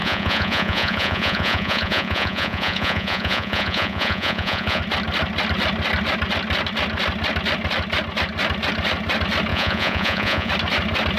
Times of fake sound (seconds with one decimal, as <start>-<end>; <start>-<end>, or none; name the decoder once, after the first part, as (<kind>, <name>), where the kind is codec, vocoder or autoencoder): 0.0-4.8 (vocoder, Vocos); 9.5-10.5